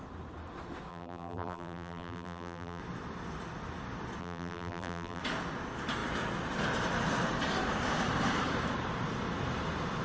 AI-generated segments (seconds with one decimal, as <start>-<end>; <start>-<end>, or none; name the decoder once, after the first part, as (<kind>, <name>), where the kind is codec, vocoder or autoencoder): 0.9-2.8 (vocoder, BigVGAN v2); 4.2-5.2